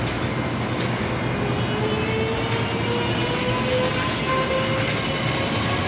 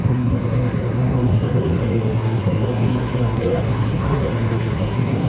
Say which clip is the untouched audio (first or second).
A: first